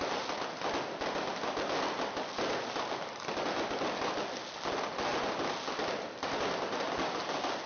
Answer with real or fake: real